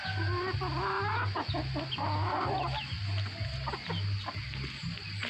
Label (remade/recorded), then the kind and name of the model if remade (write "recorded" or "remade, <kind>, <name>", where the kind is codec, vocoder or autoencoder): recorded